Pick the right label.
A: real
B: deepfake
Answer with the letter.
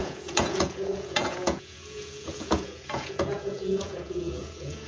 B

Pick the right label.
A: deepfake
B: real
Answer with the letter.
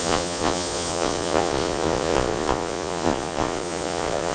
A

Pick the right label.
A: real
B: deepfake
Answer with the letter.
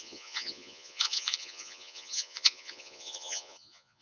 B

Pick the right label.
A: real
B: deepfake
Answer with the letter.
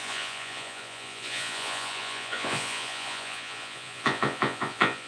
B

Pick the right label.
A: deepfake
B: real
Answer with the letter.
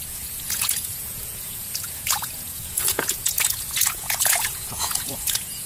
A